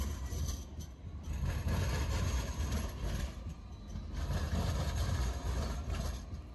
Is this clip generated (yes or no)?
no